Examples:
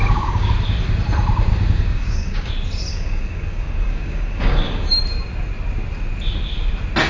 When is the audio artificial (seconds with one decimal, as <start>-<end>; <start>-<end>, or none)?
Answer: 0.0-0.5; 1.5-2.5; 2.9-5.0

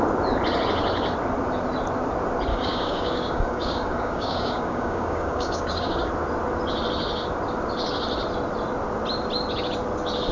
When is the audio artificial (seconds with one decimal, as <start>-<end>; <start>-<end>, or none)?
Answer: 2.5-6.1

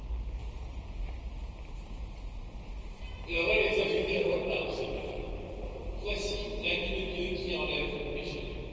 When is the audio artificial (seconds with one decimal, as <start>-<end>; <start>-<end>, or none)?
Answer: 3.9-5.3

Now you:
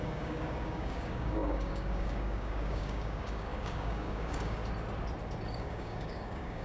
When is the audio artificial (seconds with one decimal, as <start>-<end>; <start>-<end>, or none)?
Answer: 0.0-4.6; 5.5-6.6